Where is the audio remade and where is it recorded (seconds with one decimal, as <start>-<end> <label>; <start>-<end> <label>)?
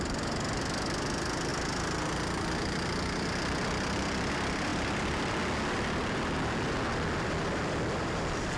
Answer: 0.0-8.6 recorded